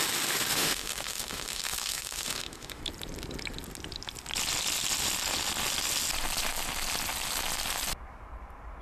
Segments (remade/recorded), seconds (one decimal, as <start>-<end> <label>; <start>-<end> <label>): 0.0-0.5 recorded; 0.5-2.8 remade; 2.8-8.8 recorded